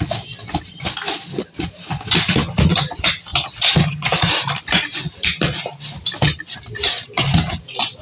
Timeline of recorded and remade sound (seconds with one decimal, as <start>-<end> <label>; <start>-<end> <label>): 0.0-3.3 recorded; 3.3-3.8 remade; 3.8-8.0 recorded